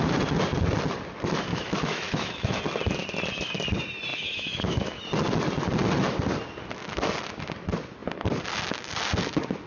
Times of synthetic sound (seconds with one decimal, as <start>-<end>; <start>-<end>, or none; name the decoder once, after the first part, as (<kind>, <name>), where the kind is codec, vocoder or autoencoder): 1.5-2.6 (autoencoder, DAC-VAE); 4.1-5.0